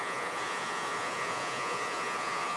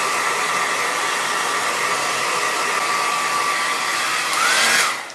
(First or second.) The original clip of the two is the second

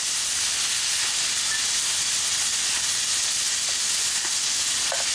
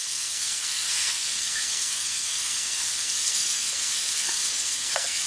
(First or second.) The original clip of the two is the first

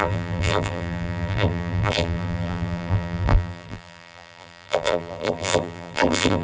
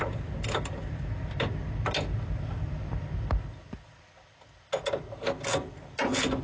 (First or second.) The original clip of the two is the second